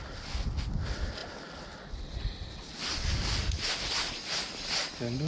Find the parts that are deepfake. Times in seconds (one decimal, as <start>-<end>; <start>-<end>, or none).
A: none